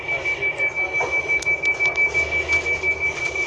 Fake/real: real